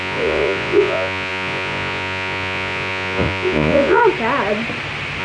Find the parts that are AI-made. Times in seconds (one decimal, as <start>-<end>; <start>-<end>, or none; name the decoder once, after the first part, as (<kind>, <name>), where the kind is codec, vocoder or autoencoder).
0.0-4.0 (vocoder, Vocos)